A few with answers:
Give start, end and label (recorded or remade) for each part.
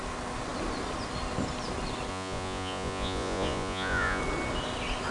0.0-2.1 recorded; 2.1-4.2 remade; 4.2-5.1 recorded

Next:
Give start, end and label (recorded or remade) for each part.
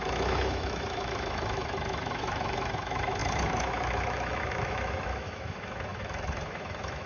0.0-7.1 remade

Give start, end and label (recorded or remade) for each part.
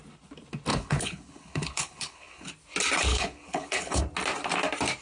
0.0-0.7 recorded; 0.7-2.5 remade; 2.5-3.1 recorded; 3.1-4.0 remade; 4.0-5.0 recorded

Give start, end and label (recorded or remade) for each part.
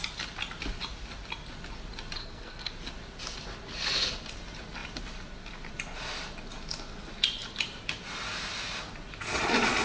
0.0-2.2 recorded; 2.2-2.7 remade; 2.7-9.8 recorded